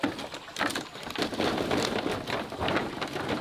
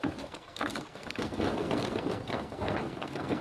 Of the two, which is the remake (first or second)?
second